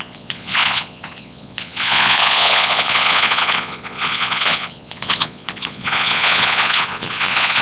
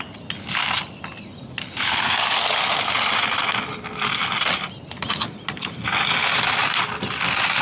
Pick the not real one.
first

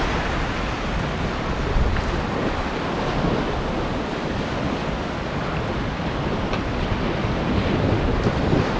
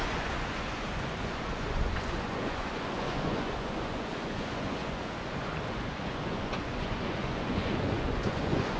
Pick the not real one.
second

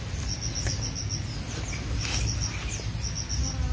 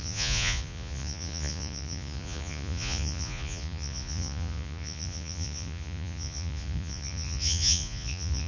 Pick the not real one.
second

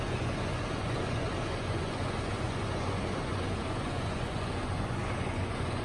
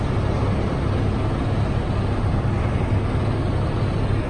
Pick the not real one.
first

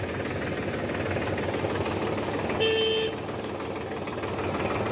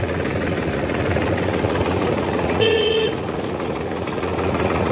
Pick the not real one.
second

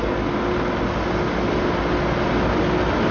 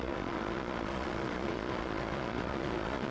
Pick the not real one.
second